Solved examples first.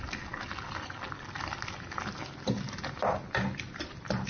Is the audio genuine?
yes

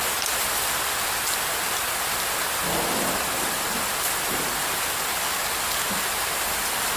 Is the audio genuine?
yes